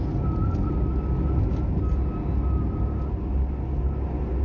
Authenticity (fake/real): real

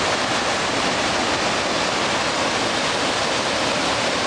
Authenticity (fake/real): real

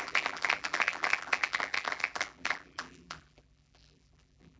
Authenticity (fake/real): fake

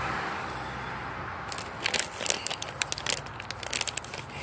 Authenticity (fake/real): real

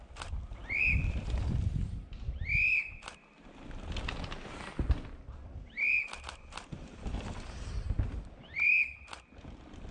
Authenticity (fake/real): fake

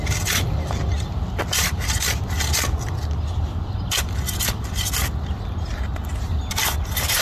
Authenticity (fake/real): real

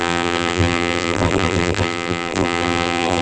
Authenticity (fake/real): fake